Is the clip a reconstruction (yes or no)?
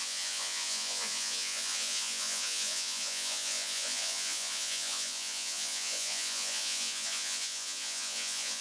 yes